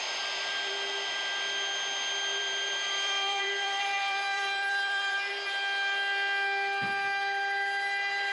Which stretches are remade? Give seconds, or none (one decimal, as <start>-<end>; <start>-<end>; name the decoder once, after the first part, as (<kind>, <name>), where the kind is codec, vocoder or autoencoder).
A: 0.0-0.7 (vocoder, BigVGAN v2); 2.3-5.3